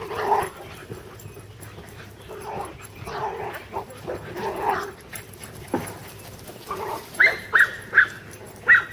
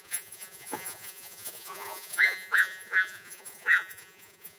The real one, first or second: first